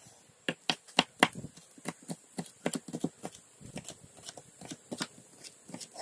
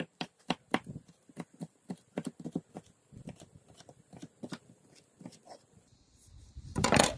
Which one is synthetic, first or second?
second